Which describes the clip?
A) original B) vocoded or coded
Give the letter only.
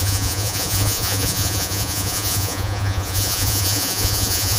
B